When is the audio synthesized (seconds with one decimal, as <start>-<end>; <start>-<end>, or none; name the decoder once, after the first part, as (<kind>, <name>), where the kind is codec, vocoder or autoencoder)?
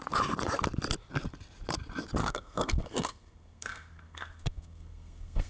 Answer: 2.2-5.5 (codec, SNAC)